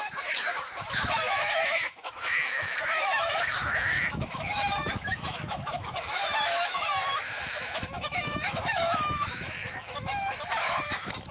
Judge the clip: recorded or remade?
remade